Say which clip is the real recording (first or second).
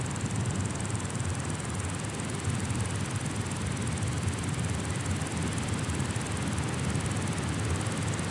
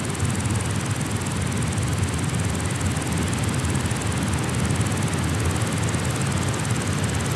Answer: second